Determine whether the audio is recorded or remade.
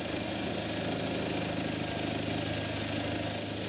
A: recorded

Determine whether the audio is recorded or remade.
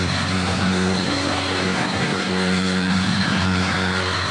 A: remade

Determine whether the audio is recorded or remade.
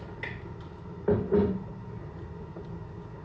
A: recorded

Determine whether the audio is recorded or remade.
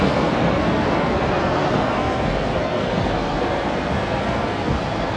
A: remade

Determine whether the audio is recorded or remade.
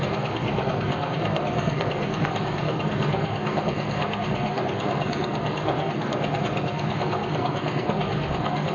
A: remade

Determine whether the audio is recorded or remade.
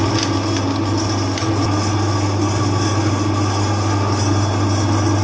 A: recorded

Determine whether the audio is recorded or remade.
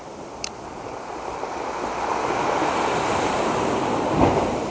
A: recorded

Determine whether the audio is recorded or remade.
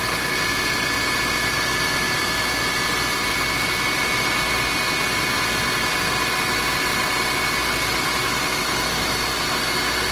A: recorded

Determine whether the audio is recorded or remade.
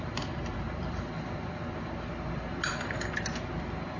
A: remade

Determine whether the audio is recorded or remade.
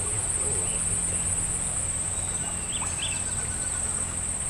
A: recorded